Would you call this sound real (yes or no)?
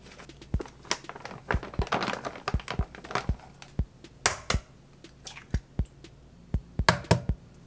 yes